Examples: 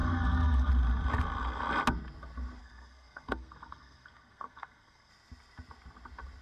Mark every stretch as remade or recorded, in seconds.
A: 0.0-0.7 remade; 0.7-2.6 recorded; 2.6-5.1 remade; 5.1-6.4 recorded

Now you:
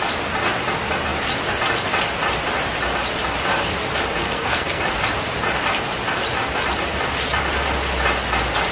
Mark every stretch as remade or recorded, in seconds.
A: 0.0-4.2 recorded; 4.2-4.8 remade; 4.8-8.7 recorded

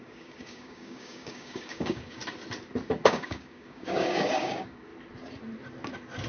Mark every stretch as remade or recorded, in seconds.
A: 0.0-2.2 remade; 2.2-3.0 recorded; 3.0-4.9 remade; 4.9-6.3 recorded

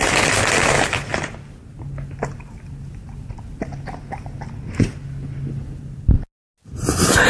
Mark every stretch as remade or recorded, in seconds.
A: 0.0-7.3 recorded

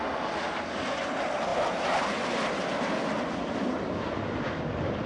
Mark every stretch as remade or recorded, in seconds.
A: 0.0-5.1 recorded

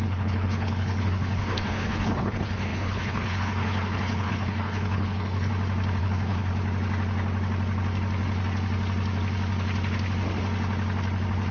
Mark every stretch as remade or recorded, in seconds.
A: 0.0-5.5 remade; 5.5-6.0 recorded; 6.0-6.5 remade; 6.5-11.5 recorded